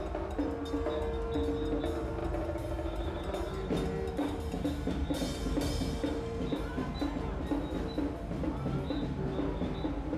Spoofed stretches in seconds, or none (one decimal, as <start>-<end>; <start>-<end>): none